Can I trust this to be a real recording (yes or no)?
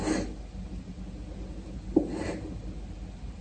yes